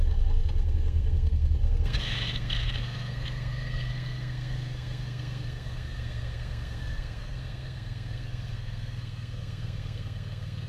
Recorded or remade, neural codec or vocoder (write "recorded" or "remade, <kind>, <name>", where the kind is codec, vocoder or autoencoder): remade, codec, SNAC